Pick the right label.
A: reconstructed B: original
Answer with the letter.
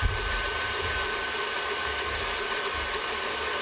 A